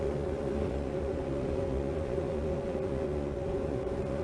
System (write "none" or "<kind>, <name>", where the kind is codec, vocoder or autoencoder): vocoder, Vocos